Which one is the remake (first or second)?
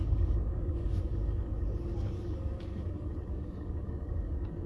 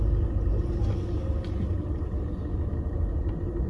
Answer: first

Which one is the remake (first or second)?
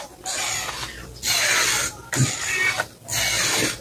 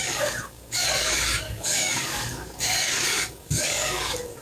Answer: second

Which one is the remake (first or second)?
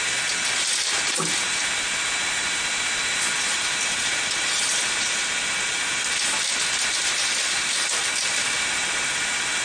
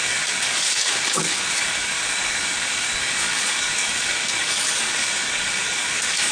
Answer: second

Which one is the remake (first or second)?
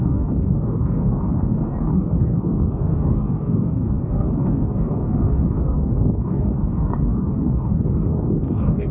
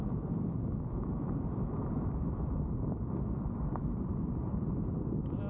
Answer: first